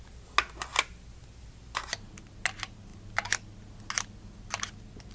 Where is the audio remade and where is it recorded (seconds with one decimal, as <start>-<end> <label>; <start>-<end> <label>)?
0.0-5.1 recorded